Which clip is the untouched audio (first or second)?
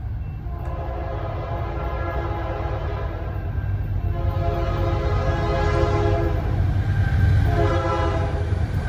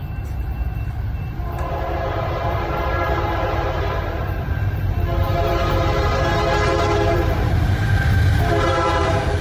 first